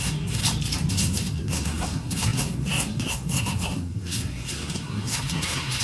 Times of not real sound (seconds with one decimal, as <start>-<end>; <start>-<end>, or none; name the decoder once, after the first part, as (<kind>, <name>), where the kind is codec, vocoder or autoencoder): 0.0-0.4 (codec, SNAC); 0.9-5.8

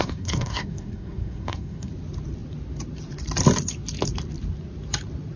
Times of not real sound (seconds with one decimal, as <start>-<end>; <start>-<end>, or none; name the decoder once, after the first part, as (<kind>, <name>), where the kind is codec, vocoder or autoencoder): 0.0-1.9 (codec, SNAC)

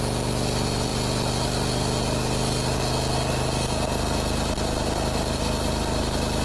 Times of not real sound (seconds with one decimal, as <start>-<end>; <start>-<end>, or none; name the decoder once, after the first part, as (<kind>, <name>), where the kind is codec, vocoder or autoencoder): none

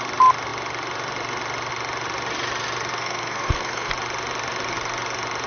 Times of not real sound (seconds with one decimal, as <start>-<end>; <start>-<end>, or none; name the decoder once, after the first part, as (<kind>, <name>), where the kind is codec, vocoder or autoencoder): 2.9-3.9 (codec, SNAC)